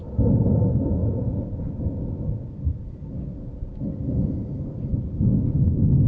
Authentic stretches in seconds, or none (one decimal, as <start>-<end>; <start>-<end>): 0.0-6.1